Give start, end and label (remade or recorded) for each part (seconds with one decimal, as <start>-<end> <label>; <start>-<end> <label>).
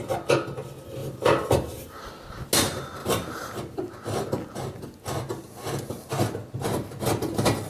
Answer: 0.0-1.0 recorded; 1.0-2.1 remade; 2.1-3.0 recorded; 3.0-3.6 remade; 3.6-7.7 recorded